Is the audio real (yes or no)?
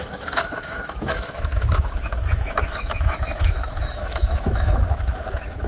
no